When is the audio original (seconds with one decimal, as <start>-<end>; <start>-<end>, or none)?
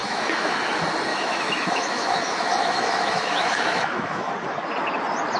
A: 0.5-1.1; 4.3-5.4